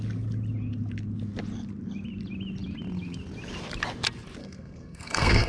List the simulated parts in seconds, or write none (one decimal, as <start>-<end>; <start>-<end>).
4.4-5.5